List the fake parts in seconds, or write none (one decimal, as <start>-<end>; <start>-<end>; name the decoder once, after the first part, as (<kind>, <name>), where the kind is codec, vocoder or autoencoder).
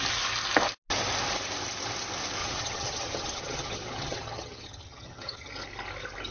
2.4-5.5 (vocoder, HiFi-GAN)